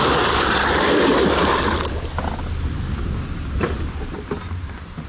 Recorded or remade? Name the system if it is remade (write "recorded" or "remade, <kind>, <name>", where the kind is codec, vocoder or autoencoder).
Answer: recorded